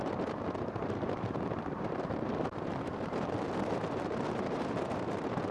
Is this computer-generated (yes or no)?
yes